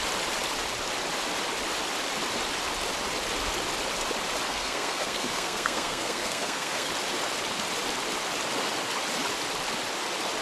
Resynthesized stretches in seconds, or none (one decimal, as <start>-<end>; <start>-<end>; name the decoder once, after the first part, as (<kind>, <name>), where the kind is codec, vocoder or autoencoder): 4.5-6.9 (codec, SNAC)